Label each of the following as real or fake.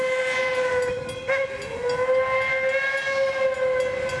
real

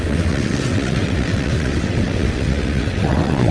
fake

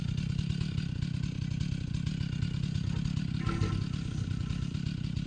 real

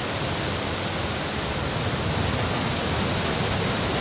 real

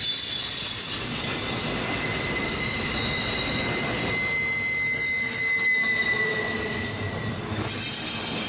real